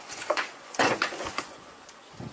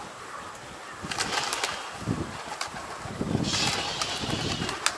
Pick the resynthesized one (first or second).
first